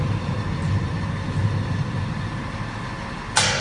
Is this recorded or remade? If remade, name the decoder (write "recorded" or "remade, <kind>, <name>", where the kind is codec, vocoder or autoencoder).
recorded